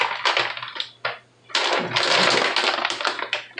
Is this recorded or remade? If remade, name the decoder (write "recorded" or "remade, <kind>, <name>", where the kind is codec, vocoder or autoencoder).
recorded